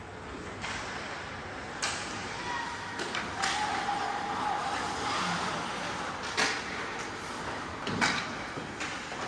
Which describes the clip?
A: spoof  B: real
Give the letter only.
B